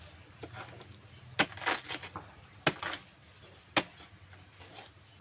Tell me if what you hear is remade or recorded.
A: recorded